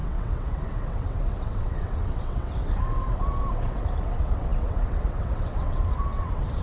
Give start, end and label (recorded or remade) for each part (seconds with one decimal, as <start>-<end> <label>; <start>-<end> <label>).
0.0-6.6 remade